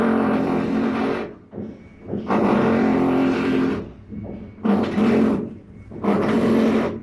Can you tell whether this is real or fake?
fake